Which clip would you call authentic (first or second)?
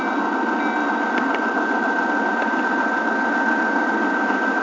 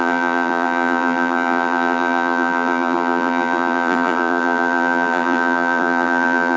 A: first